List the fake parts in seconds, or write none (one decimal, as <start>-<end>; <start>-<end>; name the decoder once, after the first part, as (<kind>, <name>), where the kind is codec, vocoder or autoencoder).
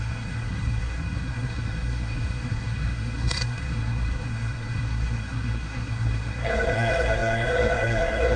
0.0-8.4 (codec, SNAC)